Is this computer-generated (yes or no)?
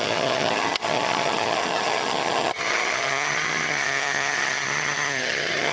yes